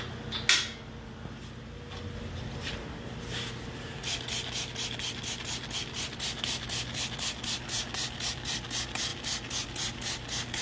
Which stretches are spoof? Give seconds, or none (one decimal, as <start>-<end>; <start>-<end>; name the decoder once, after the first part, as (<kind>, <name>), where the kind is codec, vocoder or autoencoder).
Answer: none